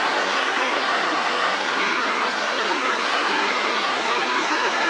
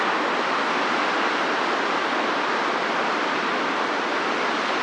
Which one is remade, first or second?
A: first